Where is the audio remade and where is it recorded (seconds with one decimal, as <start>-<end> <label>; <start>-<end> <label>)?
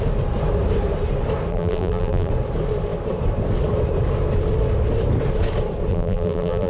0.0-1.5 recorded; 1.5-2.3 remade; 2.3-5.9 recorded; 5.9-6.7 remade